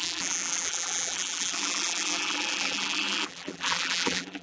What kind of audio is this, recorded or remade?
remade